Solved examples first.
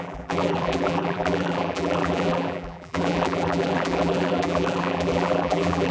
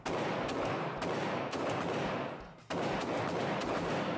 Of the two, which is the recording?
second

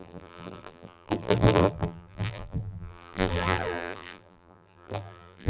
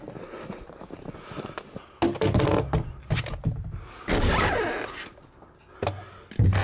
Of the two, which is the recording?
second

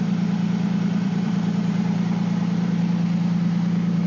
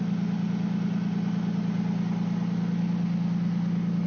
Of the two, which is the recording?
second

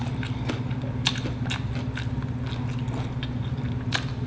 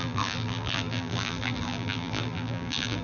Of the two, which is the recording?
first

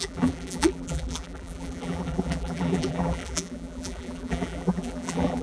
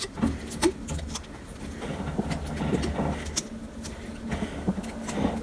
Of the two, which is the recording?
second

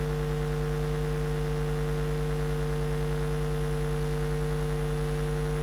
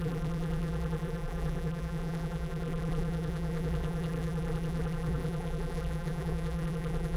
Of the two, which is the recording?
first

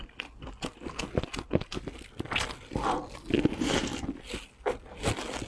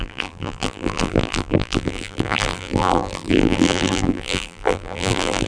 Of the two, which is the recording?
first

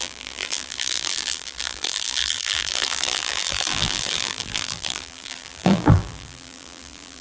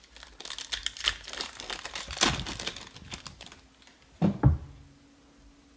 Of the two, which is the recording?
second